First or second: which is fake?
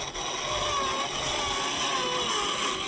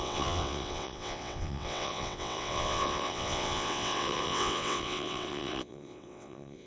second